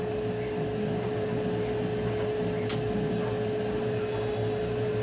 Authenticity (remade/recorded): recorded